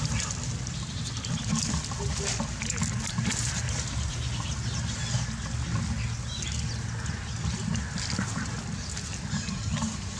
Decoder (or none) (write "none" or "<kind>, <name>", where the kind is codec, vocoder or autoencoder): none